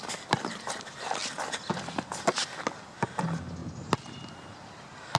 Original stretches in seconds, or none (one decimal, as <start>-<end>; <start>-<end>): 0.0-5.2